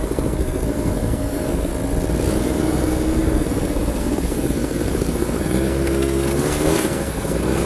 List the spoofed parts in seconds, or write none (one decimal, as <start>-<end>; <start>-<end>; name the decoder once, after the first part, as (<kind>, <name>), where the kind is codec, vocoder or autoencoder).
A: 0.0-1.7 (codec, SNAC); 2.4-7.7

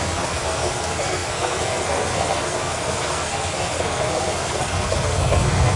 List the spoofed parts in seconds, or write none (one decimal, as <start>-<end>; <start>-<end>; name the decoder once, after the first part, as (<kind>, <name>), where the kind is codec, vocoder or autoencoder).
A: 0.0-5.8 (codec, SNAC)

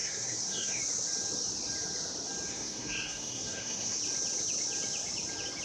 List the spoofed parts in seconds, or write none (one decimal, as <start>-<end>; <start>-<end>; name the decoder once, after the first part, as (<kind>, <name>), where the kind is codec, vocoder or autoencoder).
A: 0.0-0.8 (codec, SNAC); 2.5-4.0

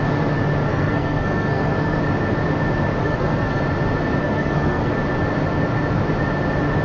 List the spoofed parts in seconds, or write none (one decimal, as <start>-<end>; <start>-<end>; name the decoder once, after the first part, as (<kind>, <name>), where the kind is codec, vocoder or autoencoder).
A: 0.7-2.0 (codec, SNAC); 3.0-3.6; 4.2-4.9

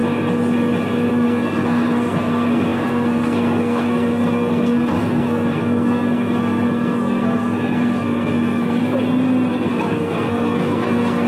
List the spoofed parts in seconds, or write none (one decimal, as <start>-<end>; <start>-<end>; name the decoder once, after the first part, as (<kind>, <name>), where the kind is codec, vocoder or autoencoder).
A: 1.1-8.8 (codec, SNAC); 9.5-11.3

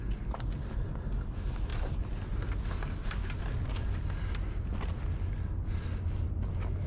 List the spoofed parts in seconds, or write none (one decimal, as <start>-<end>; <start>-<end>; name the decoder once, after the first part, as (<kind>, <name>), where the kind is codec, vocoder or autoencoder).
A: none

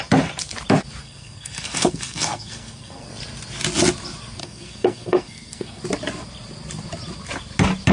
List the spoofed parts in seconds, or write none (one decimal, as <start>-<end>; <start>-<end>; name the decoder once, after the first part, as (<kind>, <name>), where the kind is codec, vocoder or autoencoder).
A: 1.0-3.1 (codec, SNAC); 4.4-5.8